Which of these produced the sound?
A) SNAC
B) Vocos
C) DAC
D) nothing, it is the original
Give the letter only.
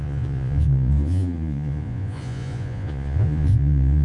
B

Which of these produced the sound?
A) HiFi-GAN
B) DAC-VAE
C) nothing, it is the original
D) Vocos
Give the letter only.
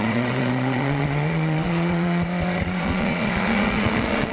D